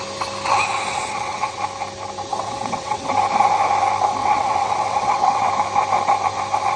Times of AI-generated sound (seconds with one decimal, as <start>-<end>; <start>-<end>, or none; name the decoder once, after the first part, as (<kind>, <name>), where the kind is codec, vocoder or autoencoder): 0.9-1.6 (vocoder, WaveNeXt); 2.3-3.1; 4.2-5.5